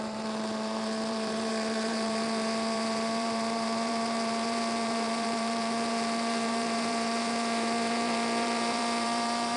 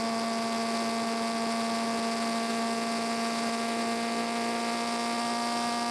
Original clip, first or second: second